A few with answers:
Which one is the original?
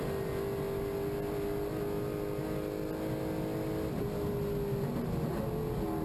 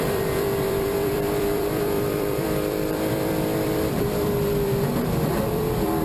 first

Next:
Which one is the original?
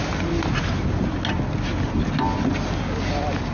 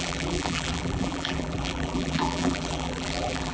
first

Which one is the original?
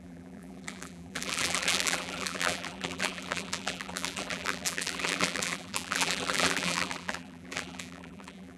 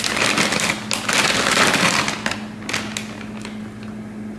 second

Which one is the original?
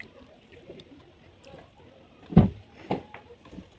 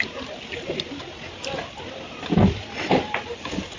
second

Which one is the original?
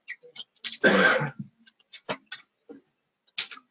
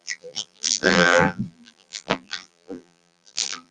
first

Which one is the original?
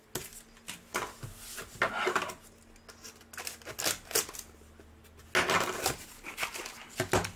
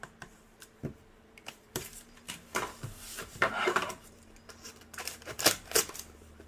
first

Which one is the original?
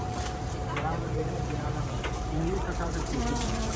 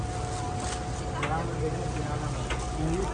second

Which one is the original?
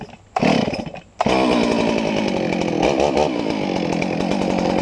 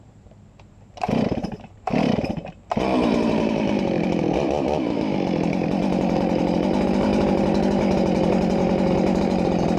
first